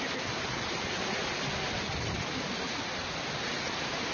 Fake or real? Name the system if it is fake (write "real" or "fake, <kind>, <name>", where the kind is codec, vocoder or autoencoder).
real